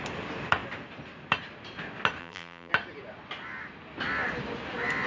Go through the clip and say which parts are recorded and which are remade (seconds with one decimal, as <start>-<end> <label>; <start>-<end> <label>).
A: 0.0-2.2 recorded; 2.2-2.7 remade; 2.7-5.1 recorded